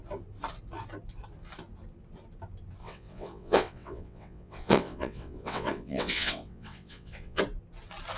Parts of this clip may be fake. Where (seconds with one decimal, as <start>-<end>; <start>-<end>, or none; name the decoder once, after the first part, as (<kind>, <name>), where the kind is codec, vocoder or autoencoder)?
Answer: 2.8-7.4 (vocoder, WaveNeXt)